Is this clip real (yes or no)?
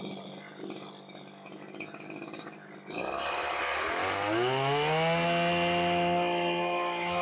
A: yes